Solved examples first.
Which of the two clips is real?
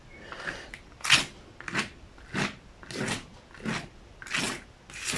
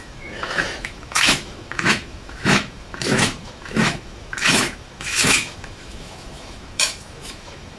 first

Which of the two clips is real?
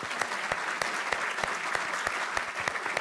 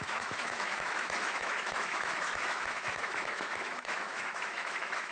first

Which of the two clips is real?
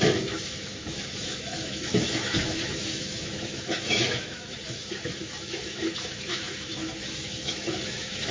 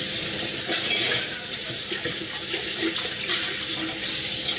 second